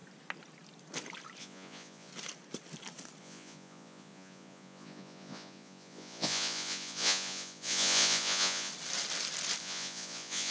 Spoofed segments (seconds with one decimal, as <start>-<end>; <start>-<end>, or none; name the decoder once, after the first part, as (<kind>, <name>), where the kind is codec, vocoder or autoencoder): 1.4-2.1 (vocoder, Vocos); 3.2-8.7; 9.6-10.5